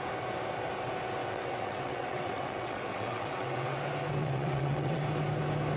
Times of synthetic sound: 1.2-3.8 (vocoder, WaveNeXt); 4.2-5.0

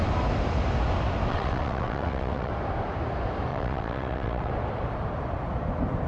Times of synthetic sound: 1.3-2.5 (vocoder, WaveNeXt); 3.5-4.5

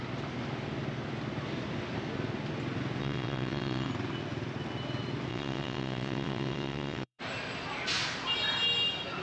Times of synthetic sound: 3.0-3.9 (vocoder, WaveNeXt); 5.3-7.2

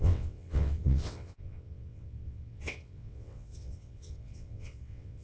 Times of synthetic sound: 0.0-5.2 (vocoder, WaveNeXt)

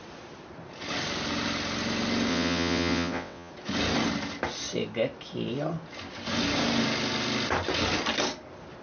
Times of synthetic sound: 2.3-3.5 (vocoder, WaveNeXt)

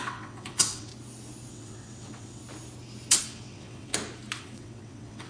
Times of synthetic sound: 0.0-0.9 (vocoder, WaveNeXt); 1.5-2.4; 3.2-3.9; 4.4-5.3

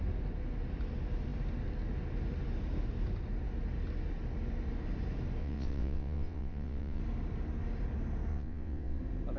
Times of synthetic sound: 5.4-7.0 (vocoder, WaveNeXt); 8.3-9.0

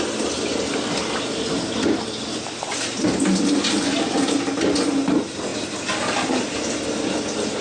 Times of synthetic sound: none